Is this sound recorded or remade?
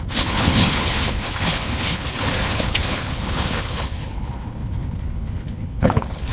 remade